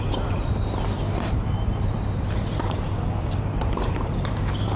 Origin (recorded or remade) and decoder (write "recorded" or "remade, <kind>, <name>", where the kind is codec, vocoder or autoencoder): remade, vocoder, BigVGAN v2